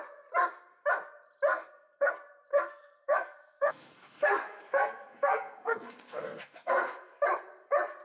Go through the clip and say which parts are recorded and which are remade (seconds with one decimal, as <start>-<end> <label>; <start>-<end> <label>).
0.0-1.5 recorded; 1.5-2.1 remade; 2.1-2.5 recorded; 2.5-7.2 remade; 7.2-8.0 recorded